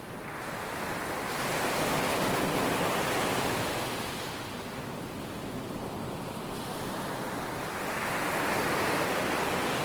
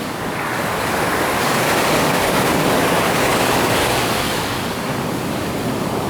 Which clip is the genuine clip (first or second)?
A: first